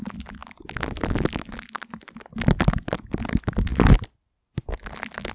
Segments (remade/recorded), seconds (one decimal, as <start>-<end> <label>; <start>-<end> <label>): 0.0-5.3 recorded